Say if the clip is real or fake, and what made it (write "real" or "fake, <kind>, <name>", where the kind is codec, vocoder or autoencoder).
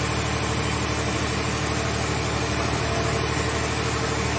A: real